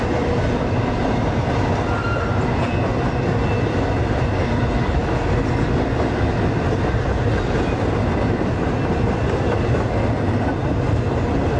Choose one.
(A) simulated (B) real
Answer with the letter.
B